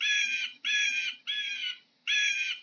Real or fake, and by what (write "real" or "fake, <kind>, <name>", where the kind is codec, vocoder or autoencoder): real